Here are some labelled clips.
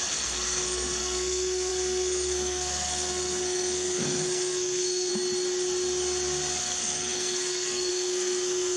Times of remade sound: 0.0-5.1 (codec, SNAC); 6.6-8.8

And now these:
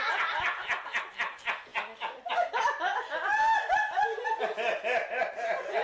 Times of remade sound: none

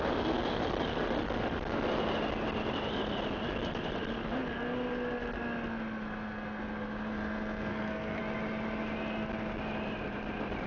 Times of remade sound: 7.7-8.2 (codec, SNAC)

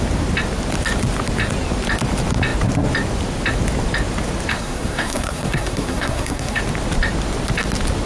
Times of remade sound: 4.5-6.6 (codec, SNAC)

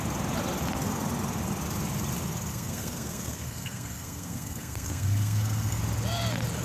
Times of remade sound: 2.5-5.8 (codec, SNAC)

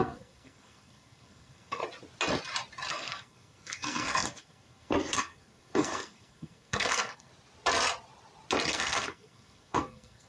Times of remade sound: 0.0-1.8 (codec, SNAC); 2.9-7.3; 8.7-10.3

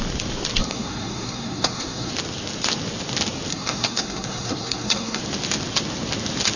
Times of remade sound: 0.6-2.1 (codec, SNAC); 3.5-5.2